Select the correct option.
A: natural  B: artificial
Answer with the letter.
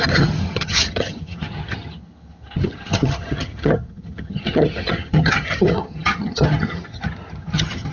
B